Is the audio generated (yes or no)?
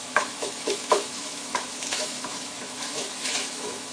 yes